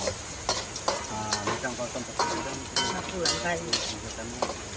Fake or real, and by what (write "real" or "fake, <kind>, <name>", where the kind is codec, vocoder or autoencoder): real